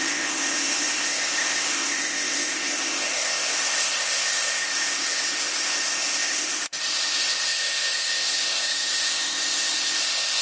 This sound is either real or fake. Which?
fake